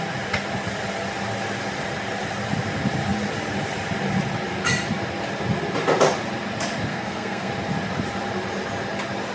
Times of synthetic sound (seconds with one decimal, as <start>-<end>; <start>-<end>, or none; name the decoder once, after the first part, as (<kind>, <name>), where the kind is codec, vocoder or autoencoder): 6.9-7.5 (codec, SNAC)